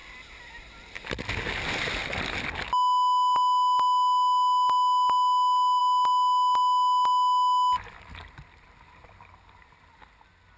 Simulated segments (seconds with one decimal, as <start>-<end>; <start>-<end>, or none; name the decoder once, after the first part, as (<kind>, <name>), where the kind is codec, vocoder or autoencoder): none